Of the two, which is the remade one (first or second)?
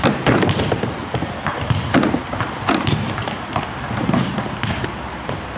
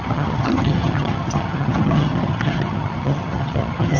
second